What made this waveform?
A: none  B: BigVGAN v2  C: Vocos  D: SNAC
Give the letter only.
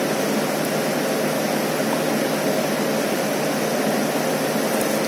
A